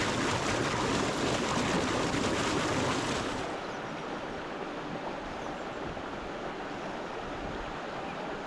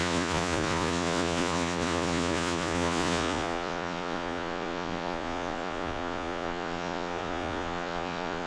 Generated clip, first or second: second